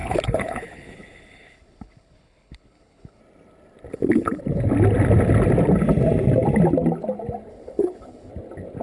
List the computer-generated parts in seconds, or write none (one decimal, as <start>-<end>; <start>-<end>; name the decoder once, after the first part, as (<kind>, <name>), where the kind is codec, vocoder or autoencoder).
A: 0.0-3.2 (codec, HILCodec); 3.9-4.4; 7.5-8.3